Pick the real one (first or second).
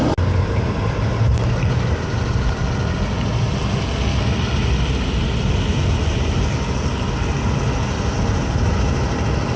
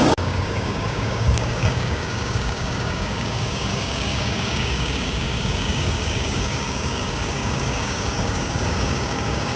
first